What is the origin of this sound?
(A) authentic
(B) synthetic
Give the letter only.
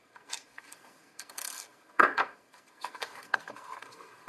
B